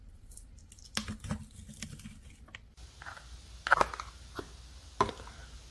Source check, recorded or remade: recorded